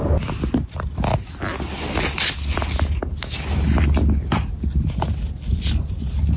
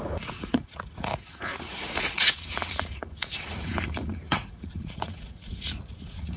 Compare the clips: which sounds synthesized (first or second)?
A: second